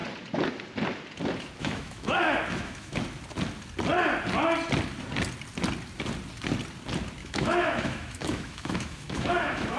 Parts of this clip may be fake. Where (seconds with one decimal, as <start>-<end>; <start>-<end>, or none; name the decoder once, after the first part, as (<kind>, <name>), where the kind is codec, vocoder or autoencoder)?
1.6-3.0 (autoencoder, DAC-VAE); 7.2-9.8